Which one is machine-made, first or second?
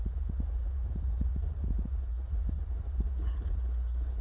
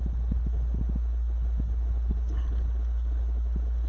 first